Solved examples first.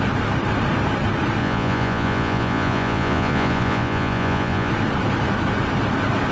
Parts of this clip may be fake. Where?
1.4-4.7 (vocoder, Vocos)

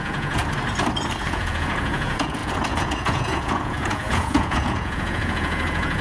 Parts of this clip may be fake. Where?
0.0-0.4 (vocoder, Vocos); 1.2-6.0

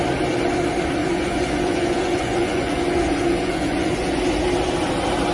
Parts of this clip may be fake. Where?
1.0-4.2 (vocoder, Vocos)

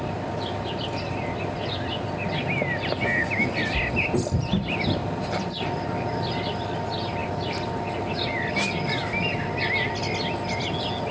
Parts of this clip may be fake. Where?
none

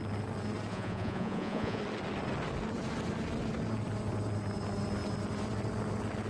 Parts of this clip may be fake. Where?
0.7-1.8 (vocoder, Vocos)

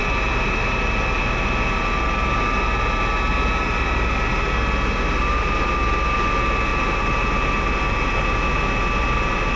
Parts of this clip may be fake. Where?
none

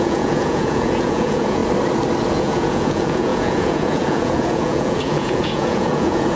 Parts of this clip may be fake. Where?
0.0-1.6 (vocoder, Vocos); 2.3-6.4